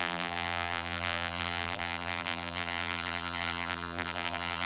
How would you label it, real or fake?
fake